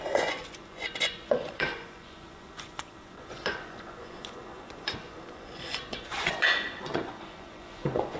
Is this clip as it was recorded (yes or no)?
no